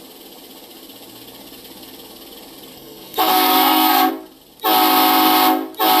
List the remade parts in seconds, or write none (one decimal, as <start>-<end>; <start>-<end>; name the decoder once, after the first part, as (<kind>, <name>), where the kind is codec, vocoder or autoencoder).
2.7-4.1 (codec, SNAC)